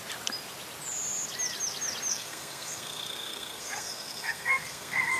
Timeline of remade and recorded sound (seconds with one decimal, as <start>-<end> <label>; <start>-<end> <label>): 0.0-2.1 recorded; 2.1-5.2 remade